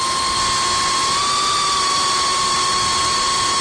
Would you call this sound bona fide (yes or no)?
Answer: yes